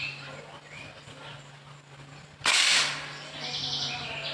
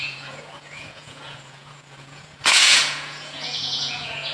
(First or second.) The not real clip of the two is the second